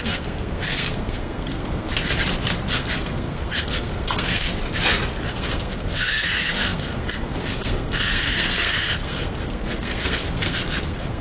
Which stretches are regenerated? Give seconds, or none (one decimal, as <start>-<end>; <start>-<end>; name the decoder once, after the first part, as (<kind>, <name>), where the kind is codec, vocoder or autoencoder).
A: 0.0-1.9 (codec, SNAC); 2.7-4.5; 5.3-11.2